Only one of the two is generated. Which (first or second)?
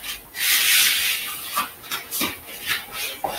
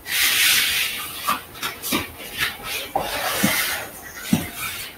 second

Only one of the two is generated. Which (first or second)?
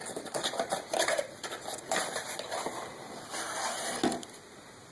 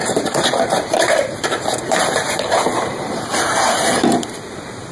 second